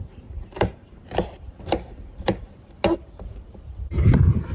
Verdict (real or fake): fake